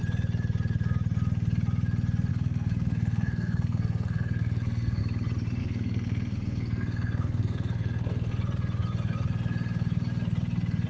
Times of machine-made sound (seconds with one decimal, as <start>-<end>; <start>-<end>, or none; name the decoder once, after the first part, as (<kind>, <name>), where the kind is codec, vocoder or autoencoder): 2.3-5.0 (codec, SNAC); 5.6-8.3